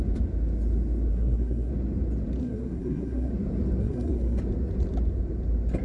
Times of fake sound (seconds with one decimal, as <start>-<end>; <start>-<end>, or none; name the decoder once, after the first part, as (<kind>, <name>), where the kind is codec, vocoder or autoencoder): 1.1-1.7 (codec, SNAC); 2.4-3.3; 3.8-4.4